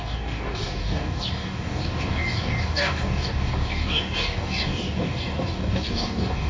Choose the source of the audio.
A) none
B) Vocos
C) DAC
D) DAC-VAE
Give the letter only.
C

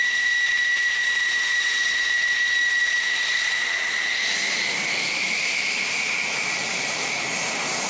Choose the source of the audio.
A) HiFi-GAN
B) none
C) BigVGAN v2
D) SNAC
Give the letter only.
B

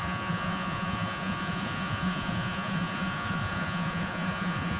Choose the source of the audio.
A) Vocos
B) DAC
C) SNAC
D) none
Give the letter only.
A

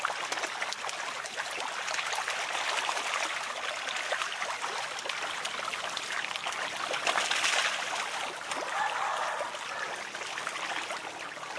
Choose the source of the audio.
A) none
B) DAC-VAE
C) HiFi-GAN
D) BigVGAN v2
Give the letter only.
A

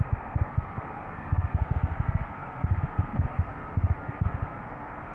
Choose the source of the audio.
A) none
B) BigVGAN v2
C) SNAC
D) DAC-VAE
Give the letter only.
C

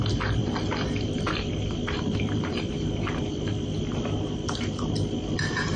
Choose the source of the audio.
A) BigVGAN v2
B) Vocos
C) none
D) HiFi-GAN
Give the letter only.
C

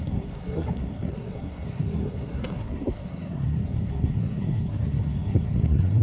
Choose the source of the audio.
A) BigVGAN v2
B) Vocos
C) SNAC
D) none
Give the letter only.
C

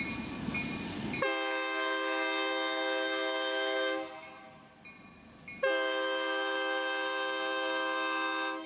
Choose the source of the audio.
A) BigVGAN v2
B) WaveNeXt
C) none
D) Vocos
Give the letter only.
C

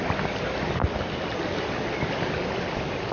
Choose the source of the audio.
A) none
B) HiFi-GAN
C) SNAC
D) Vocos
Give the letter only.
A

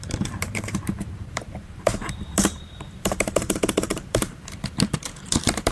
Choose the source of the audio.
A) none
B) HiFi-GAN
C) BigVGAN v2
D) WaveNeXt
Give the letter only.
C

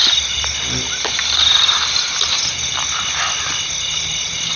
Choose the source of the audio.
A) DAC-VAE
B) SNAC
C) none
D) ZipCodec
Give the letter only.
C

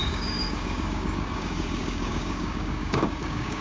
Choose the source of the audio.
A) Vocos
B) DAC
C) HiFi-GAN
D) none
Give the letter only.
B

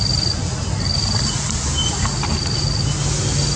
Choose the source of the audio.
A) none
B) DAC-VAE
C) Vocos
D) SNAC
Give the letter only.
A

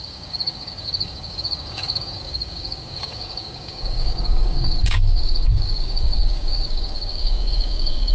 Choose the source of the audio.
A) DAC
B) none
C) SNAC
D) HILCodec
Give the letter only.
A